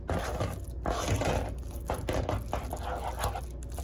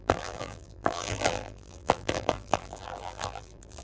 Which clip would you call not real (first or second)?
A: second